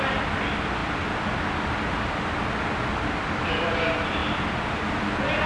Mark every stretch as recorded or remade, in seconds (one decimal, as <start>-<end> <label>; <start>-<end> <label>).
0.0-0.8 recorded; 0.8-2.3 remade; 2.3-5.5 recorded